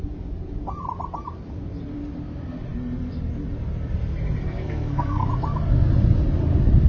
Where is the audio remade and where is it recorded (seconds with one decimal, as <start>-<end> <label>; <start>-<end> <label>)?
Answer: 0.0-4.4 recorded; 4.4-5.3 remade; 5.3-6.9 recorded